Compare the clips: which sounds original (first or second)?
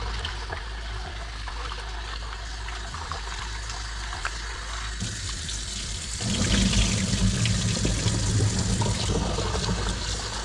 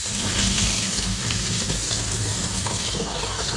first